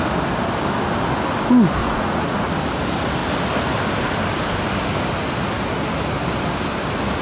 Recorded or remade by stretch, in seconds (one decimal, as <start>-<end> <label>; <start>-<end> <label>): 0.0-1.8 recorded; 1.8-2.5 remade; 2.5-7.2 recorded